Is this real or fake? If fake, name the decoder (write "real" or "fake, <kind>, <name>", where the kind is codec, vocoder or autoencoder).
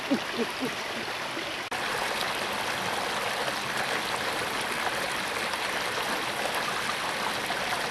real